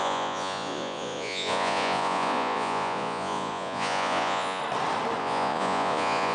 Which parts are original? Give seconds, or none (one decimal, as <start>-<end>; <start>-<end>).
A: 4.6-5.2